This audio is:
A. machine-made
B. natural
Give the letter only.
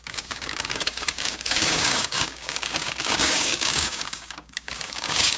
A